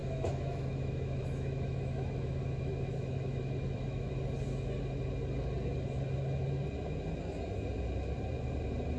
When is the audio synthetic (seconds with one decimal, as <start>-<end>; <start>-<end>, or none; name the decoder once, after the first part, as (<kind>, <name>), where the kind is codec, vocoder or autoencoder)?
0.0-4.1 (autoencoder, DAC-VAE)